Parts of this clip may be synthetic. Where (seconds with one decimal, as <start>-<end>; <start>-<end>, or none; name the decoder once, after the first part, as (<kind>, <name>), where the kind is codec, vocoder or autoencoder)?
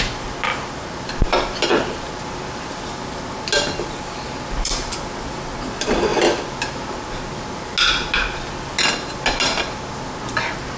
none